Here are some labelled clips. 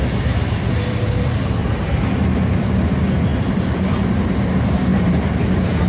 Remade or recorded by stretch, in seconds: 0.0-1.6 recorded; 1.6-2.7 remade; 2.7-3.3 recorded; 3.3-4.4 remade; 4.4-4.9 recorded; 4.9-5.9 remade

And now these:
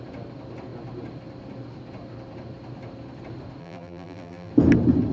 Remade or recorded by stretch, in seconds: 0.0-3.6 recorded; 3.6-4.5 remade; 4.5-5.1 recorded

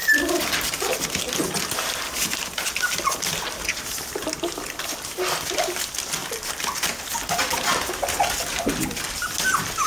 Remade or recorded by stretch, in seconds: 0.0-9.9 recorded

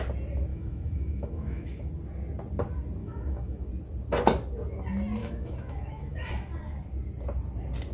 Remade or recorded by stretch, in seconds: 0.0-0.5 recorded; 0.5-1.9 remade; 1.9-3.0 recorded; 3.0-3.7 remade; 3.7-5.2 recorded; 5.2-6.3 remade; 6.3-7.9 recorded

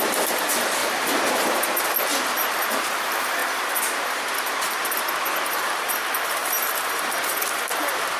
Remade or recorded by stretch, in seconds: 0.0-0.8 recorded; 0.8-1.8 remade; 1.8-6.4 recorded; 6.4-7.0 remade; 7.0-8.2 recorded

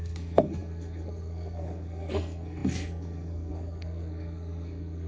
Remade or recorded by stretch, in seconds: 0.0-5.1 remade